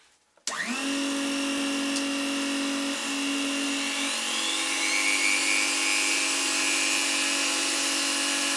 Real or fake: real